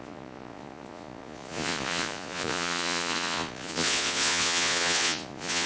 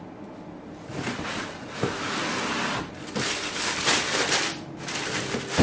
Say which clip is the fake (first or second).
first